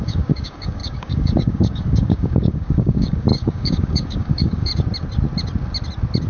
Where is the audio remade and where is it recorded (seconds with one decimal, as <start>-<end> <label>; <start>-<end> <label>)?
0.0-4.7 remade; 4.7-6.3 recorded